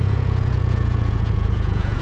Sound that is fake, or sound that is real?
fake